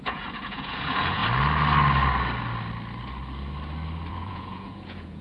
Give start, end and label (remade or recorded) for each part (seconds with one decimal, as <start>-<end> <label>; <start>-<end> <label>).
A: 0.0-1.2 remade; 1.2-4.1 recorded; 4.1-5.2 remade